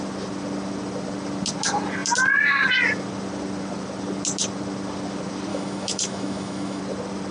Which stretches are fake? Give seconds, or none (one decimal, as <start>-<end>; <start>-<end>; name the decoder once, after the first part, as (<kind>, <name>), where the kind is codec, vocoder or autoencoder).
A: 5.5-6.8 (autoencoder, DAC-VAE)